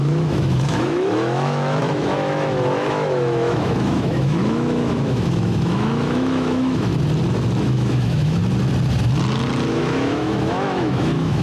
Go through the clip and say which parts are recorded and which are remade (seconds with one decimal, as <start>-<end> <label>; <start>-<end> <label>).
0.0-6.9 remade; 6.9-7.6 recorded; 7.6-8.4 remade; 8.4-9.7 recorded; 9.7-11.4 remade